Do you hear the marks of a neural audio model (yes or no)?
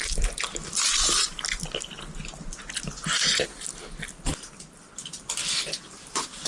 no